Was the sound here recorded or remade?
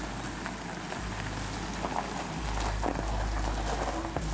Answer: recorded